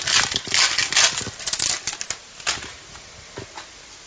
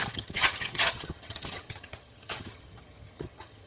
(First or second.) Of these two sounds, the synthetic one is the second